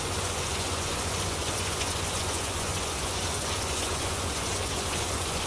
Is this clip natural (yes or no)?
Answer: no